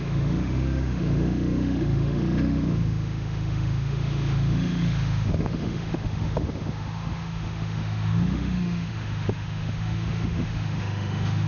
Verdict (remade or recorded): remade